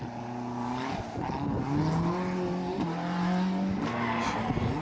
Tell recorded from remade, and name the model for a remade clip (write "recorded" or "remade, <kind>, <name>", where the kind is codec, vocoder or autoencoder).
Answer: recorded